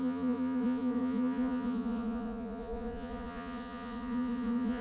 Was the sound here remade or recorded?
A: remade